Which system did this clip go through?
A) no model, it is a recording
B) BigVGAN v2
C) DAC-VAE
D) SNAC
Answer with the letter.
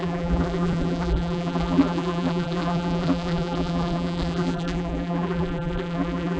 B